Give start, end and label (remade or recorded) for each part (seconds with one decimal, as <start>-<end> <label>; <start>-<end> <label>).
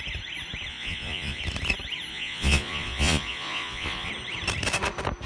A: 0.0-0.7 recorded; 0.7-1.4 remade; 1.4-2.1 recorded; 2.1-4.1 remade; 4.1-5.3 recorded